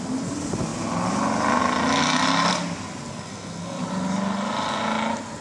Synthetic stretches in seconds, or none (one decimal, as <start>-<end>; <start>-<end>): 3.1-3.8

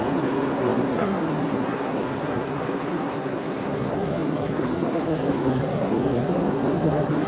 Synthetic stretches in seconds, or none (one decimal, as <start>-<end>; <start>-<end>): 0.0-7.3

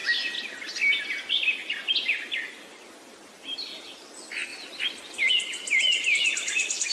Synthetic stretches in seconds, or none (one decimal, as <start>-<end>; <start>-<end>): none

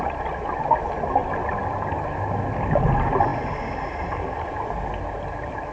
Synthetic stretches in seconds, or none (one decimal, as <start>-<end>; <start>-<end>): none

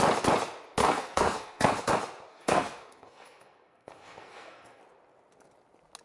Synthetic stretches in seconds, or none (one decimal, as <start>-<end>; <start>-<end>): 0.8-1.9; 2.3-4.8

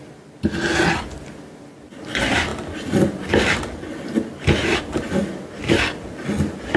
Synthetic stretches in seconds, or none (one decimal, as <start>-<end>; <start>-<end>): none

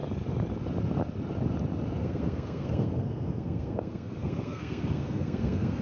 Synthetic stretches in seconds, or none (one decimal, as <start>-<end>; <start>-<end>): 2.0-5.8

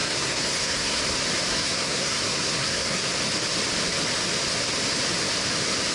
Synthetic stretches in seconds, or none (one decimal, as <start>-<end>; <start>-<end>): 0.0-1.0; 1.5-3.1